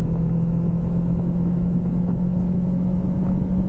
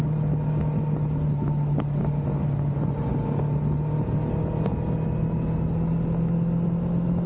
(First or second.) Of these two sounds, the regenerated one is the first